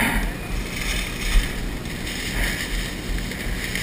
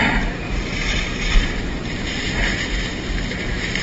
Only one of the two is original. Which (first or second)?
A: first